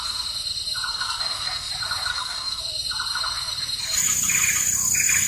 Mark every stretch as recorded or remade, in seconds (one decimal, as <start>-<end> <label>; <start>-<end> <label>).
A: 0.0-0.9 recorded; 0.9-1.7 remade; 1.7-2.1 recorded; 2.1-2.6 remade; 2.6-5.3 recorded